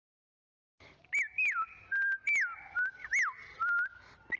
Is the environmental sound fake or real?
real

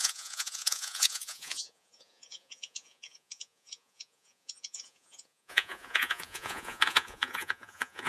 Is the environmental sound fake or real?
fake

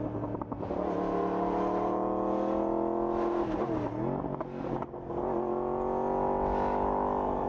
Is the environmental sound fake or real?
real